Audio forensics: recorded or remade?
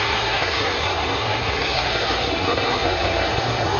remade